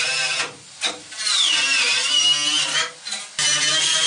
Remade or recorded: recorded